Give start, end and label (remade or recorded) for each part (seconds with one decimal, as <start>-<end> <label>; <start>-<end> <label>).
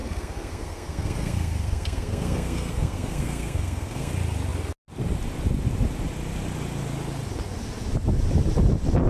0.0-4.1 remade; 4.1-9.1 recorded